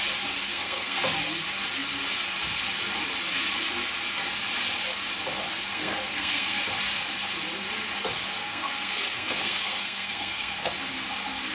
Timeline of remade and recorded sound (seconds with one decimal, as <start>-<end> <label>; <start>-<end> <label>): 0.0-0.5 recorded; 0.5-1.0 remade; 1.0-5.7 recorded; 5.7-6.6 remade; 6.6-8.4 recorded; 8.4-10.7 remade; 10.7-11.5 recorded

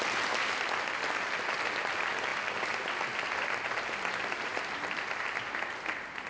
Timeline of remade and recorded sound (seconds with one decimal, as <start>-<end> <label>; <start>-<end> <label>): 0.0-6.3 recorded

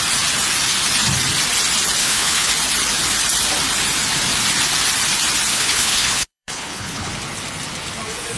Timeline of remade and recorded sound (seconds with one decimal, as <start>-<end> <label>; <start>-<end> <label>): 0.0-2.0 recorded; 2.0-2.5 remade; 2.5-5.5 recorded; 5.5-7.1 remade; 7.1-8.4 recorded

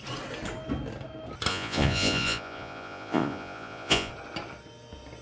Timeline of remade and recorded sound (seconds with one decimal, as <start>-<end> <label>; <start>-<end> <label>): 0.0-1.5 recorded; 1.5-4.1 remade; 4.1-5.2 recorded